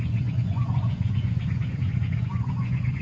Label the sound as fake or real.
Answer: fake